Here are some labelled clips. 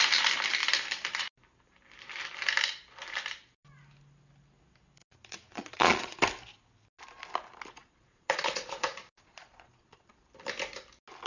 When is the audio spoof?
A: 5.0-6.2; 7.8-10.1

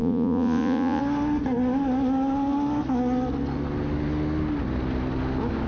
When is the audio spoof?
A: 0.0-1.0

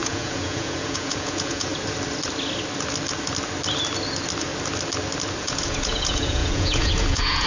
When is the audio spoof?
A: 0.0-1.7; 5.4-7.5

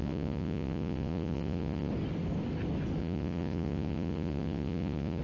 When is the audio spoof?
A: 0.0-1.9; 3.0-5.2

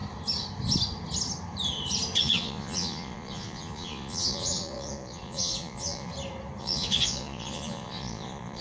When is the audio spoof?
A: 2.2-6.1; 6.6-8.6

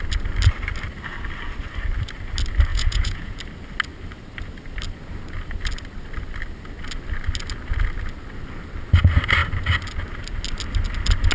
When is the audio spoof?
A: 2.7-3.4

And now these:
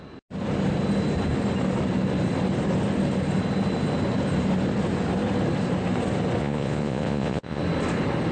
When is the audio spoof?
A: 6.4-7.6

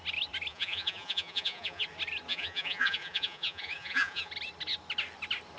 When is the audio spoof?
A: 0.5-1.8; 2.3-4.3